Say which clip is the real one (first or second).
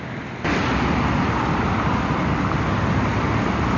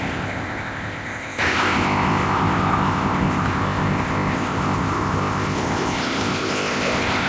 first